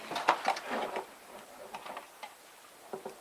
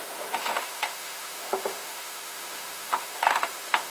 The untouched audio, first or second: first